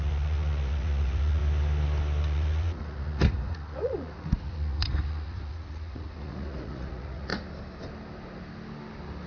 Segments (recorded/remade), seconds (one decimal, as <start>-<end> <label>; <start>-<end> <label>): 0.0-1.4 remade; 1.4-2.2 recorded; 2.2-7.3 remade; 7.3-9.3 recorded